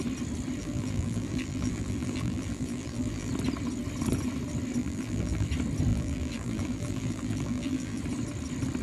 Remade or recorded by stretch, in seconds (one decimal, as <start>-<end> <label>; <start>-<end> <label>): 0.0-0.6 recorded; 0.6-3.3 remade; 3.3-4.8 recorded; 4.8-5.5 remade; 5.5-5.9 recorded; 5.9-8.0 remade; 8.0-8.8 recorded